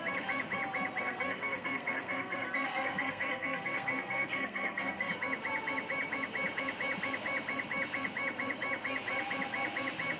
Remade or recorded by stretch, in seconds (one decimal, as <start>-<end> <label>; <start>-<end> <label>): 0.0-1.0 recorded; 1.0-5.1 remade; 5.1-10.2 recorded